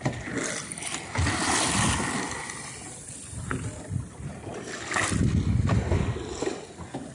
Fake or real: real